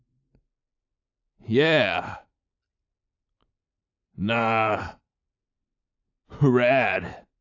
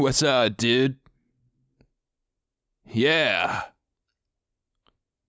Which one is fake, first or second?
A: first